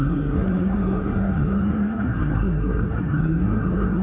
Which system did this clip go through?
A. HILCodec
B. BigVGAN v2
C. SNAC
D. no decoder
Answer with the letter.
C